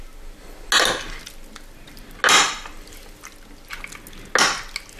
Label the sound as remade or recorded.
recorded